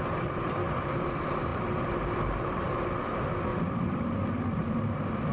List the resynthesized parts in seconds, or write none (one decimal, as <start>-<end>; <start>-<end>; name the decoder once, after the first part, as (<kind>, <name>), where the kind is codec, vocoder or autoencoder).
1.5-2.9 (vocoder, BigVGAN v2)